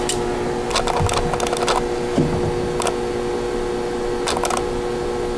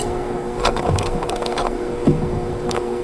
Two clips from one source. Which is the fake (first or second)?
second